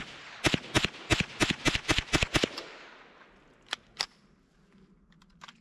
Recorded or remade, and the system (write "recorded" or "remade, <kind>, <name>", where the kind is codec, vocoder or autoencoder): recorded